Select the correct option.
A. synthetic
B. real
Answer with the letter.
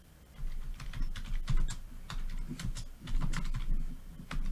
B